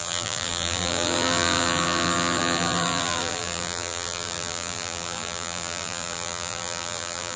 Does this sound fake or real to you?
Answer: fake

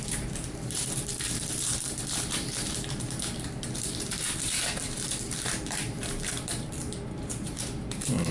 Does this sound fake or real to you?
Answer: fake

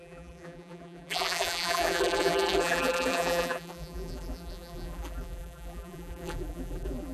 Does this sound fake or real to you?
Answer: fake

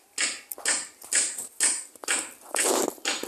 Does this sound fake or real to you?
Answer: real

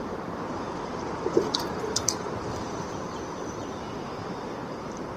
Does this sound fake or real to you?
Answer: fake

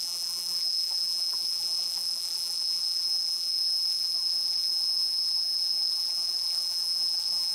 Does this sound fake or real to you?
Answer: fake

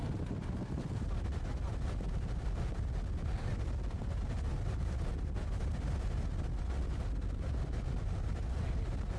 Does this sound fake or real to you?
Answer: real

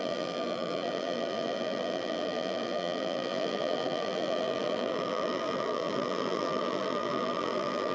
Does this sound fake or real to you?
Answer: fake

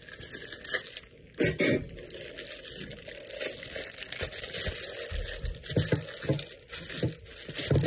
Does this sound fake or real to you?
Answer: real